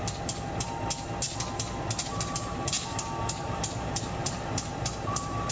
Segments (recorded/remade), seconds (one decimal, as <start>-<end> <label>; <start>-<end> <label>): 0.0-2.1 recorded; 2.1-5.5 remade